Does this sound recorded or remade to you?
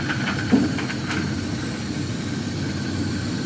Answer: recorded